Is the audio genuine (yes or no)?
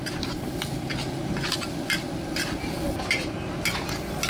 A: yes